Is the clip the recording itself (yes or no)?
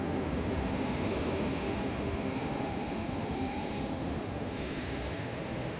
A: no